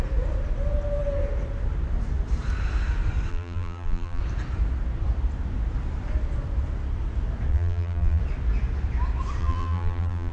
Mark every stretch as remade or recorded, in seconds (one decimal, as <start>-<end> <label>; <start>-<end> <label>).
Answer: 0.0-3.3 recorded; 3.3-4.2 remade; 4.2-7.5 recorded; 7.5-8.2 remade; 8.2-9.4 recorded; 9.4-10.3 remade